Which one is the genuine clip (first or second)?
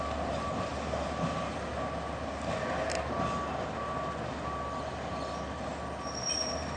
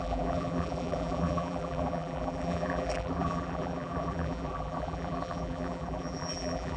first